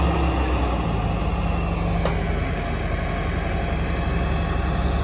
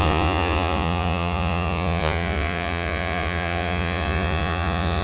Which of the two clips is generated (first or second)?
second